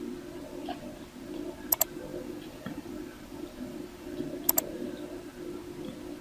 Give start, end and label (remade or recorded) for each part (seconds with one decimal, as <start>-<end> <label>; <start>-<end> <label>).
0.0-2.1 recorded; 2.1-4.2 remade; 4.2-6.2 recorded